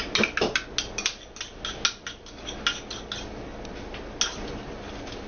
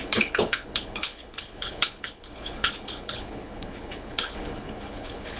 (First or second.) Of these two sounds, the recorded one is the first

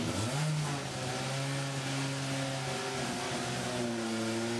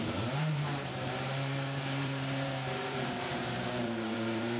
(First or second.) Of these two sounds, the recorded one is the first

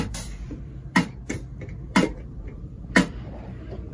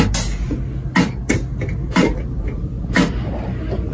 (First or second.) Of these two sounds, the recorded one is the second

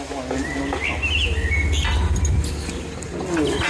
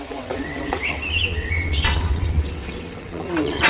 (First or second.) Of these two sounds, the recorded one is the first